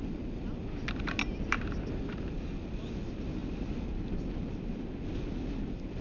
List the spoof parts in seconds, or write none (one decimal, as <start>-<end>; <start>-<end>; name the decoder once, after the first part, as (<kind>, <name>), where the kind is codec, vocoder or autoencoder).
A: none